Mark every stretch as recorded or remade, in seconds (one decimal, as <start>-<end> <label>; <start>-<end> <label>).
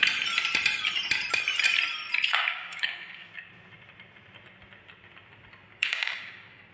0.0-2.3 recorded; 2.3-3.3 remade; 3.3-5.7 recorded; 5.7-6.7 remade